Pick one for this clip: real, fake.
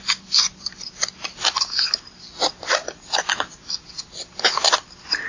real